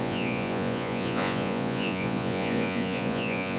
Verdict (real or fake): fake